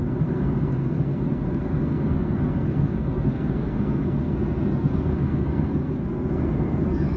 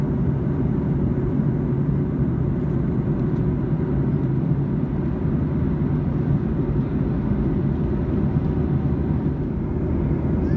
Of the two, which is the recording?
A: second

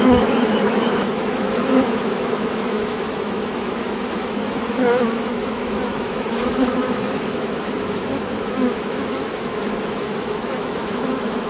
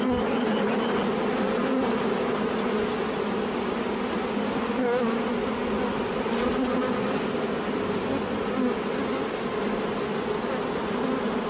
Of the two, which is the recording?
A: second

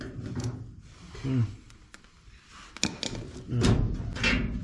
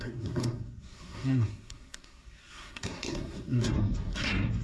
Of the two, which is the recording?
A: first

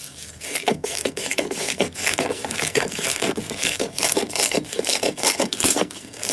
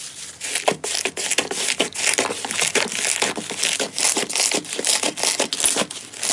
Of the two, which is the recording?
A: second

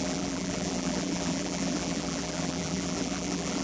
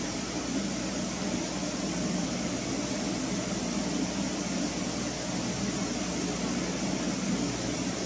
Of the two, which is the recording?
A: second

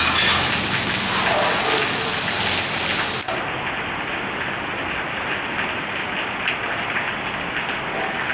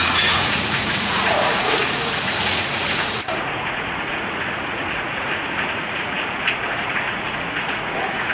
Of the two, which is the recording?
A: first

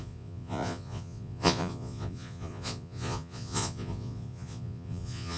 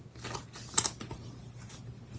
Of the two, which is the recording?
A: second